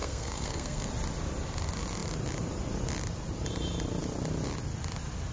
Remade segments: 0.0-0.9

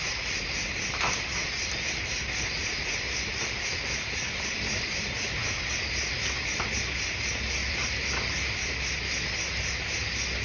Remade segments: 2.6-5.0; 7.6-8.8

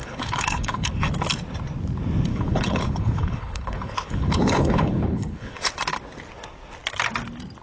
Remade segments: 0.0-0.9; 2.3-5.8

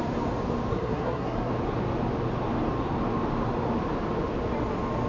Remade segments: 0.7-1.5